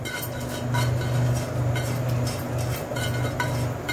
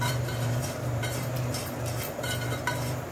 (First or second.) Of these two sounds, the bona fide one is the first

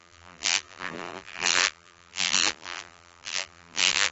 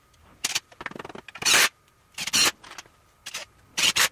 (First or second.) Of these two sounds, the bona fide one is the second